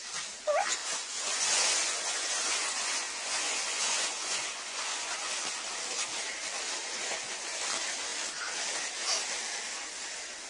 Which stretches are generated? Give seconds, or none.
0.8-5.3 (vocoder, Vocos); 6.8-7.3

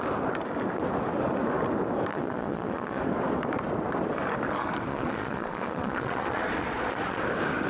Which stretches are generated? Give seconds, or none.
2.1-3.0 (vocoder, Vocos); 4.9-7.2